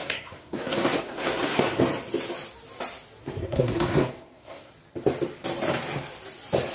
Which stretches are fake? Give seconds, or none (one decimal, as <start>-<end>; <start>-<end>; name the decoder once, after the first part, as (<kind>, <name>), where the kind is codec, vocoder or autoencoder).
0.0-1.8 (codec, SNAC); 3.2-4.7